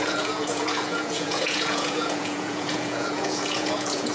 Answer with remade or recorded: remade